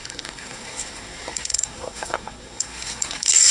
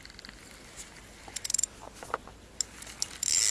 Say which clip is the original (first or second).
second